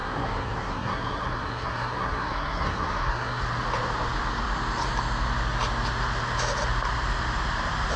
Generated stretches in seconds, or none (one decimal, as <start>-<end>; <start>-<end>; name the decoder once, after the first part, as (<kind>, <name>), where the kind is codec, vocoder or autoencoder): 0.0-3.4 (codec, SNAC)

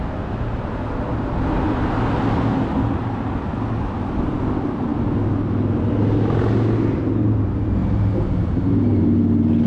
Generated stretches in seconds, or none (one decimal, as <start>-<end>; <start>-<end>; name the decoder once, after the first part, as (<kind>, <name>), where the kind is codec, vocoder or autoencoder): none